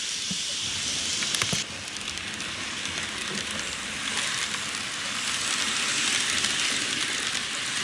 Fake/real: real